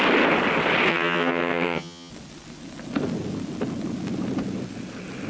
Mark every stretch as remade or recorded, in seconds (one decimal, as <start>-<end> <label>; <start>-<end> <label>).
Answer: 0.0-0.9 recorded; 0.9-2.1 remade; 2.1-5.3 recorded

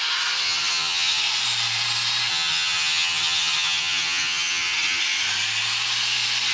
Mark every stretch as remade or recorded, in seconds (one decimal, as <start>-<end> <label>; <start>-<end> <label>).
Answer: 0.0-0.4 recorded; 0.4-1.2 remade; 1.2-2.3 recorded; 2.3-5.0 remade; 5.0-6.5 recorded